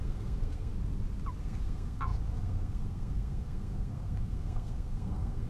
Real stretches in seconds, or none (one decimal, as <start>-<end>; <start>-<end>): 0.7-1.4

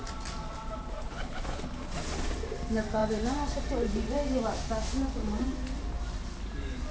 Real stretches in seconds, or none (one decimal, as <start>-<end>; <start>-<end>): 0.0-1.0; 1.6-6.9

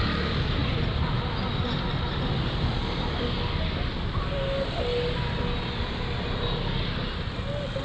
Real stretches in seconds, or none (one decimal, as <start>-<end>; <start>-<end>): 0.0-7.8